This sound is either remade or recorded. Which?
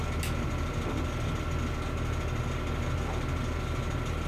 recorded